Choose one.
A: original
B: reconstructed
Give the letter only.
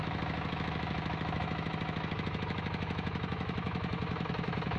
B